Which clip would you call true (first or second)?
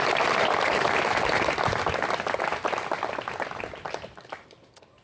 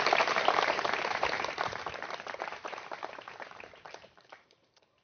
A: first